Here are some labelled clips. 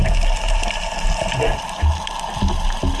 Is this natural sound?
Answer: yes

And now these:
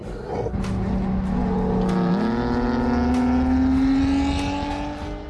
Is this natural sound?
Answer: yes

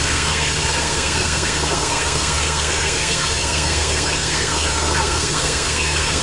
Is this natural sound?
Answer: no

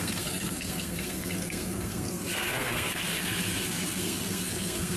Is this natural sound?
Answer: no